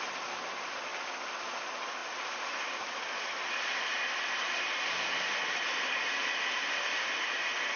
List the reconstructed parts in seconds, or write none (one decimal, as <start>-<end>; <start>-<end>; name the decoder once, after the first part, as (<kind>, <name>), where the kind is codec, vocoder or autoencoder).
none